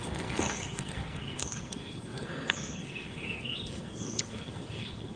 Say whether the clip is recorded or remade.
remade